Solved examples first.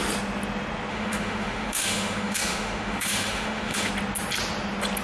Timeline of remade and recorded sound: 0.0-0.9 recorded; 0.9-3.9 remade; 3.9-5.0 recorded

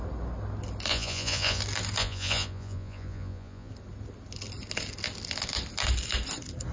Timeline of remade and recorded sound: 0.0-0.9 recorded; 0.9-1.6 remade; 1.6-2.0 recorded; 2.0-3.7 remade; 3.7-6.7 recorded